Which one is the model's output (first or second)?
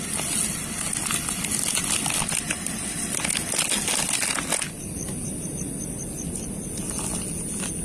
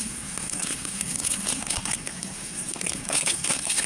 second